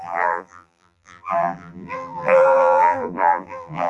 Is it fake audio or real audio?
fake